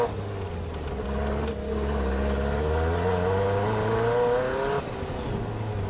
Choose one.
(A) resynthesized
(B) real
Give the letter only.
B